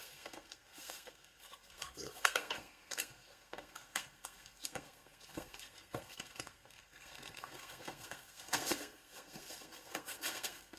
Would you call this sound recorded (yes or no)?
no